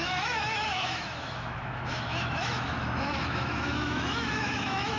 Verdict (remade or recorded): remade